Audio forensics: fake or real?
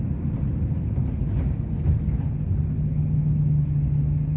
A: real